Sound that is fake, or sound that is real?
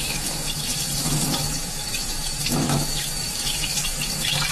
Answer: fake